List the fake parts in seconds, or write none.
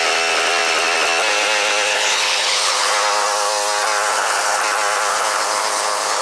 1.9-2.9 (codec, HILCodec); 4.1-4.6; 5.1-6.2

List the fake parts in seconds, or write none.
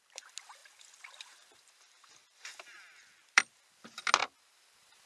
0.6-3.7 (vocoder, BigVGAN v2)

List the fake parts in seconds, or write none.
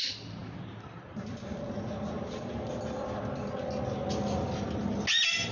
none